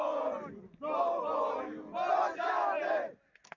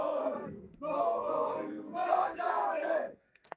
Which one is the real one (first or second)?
first